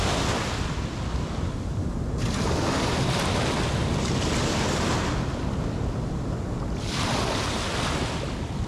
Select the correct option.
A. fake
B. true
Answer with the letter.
B